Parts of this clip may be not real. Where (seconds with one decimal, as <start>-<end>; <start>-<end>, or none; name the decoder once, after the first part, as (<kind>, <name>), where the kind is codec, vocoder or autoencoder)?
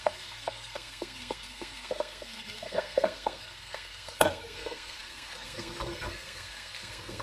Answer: 0.0-7.2 (codec, SNAC)